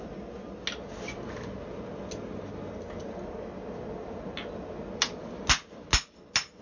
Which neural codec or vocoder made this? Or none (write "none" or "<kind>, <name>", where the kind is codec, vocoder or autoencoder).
none